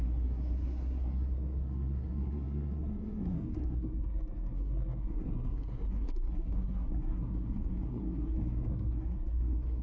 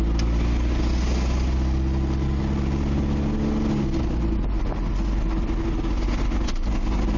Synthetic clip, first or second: first